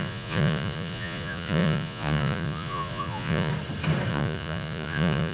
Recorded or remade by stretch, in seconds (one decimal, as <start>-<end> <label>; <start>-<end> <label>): 0.0-3.5 remade; 3.5-4.1 recorded; 4.1-5.3 remade